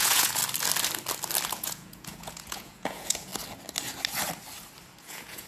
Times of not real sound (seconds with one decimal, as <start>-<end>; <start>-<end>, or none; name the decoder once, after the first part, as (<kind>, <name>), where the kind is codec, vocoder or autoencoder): 0.0-0.4 (vocoder, Vocos); 1.5-3.3; 5.0-5.5

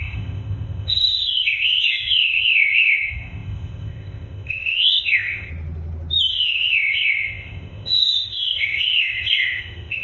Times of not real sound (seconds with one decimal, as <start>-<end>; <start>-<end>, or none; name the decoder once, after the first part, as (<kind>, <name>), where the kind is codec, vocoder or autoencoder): 0.0-5.5 (codec, ZipCodec); 6.3-10.0

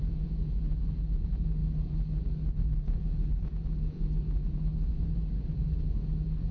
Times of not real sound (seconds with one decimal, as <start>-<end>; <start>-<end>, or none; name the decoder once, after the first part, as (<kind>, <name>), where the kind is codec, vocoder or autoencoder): 0.0-1.6 (vocoder, Vocos); 2.5-6.5

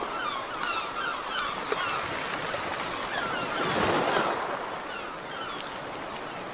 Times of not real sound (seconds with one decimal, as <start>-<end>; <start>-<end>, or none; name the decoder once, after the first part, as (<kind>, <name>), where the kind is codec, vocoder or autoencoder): none

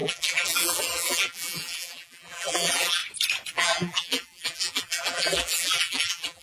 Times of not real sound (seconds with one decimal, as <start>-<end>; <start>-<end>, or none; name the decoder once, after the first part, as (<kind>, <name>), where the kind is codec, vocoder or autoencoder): 0.0-3.0 (vocoder, BigVGAN v2); 3.5-6.4